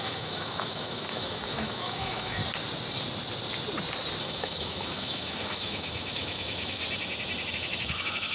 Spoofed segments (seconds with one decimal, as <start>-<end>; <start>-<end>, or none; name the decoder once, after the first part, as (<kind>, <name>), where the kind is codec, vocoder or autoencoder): 0.0-2.4 (autoencoder, DAC-VAE); 4.2-6.8; 7.5-8.3